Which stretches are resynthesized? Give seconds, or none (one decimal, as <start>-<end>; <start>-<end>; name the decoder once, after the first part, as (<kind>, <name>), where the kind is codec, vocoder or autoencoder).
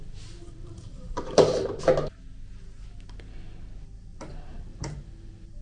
0.6-1.8 (vocoder, BigVGAN v2); 4.1-5.6